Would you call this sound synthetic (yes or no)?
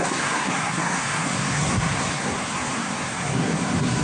yes